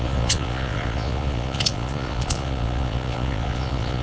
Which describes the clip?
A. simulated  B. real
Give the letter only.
A